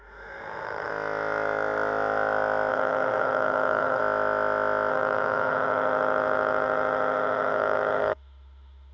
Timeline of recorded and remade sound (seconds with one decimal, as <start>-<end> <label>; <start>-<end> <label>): 0.0-0.9 remade; 0.9-2.7 recorded; 2.7-4.0 remade; 4.0-4.9 recorded; 4.9-8.9 remade